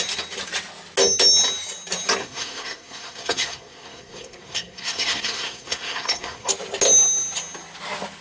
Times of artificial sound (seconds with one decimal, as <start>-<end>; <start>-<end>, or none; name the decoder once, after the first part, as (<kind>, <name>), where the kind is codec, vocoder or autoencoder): 2.2-6.5 (codec, SNAC)